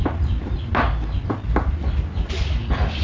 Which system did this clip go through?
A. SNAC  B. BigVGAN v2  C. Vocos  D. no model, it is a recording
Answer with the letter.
D